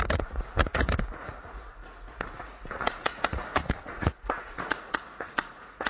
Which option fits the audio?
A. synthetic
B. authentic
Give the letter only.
A